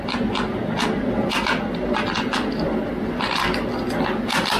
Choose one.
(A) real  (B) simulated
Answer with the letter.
A